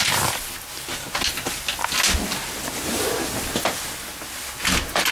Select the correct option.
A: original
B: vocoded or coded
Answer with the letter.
A